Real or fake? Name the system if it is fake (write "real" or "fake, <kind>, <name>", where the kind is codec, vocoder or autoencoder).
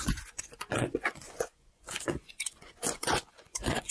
fake, vocoder, Vocos